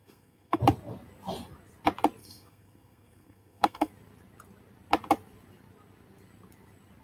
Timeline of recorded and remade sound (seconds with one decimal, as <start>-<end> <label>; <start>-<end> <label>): 0.0-0.6 remade; 0.6-2.2 recorded; 2.2-3.9 remade; 3.9-7.0 recorded